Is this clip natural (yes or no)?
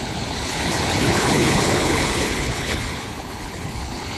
no